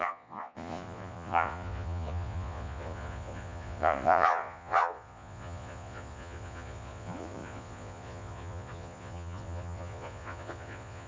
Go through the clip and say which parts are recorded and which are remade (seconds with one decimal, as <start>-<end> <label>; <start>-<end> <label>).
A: 0.0-11.1 remade